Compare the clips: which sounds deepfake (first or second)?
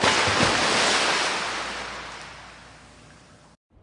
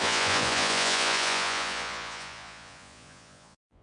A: second